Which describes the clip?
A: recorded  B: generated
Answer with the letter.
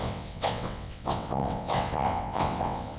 B